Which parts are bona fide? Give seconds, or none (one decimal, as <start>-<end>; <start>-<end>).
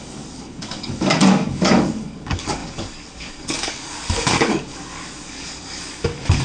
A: none